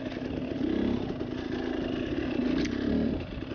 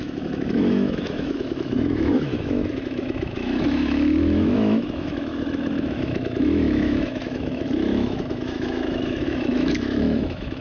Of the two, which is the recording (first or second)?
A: first